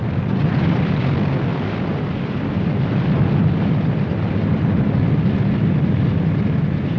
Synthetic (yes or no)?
yes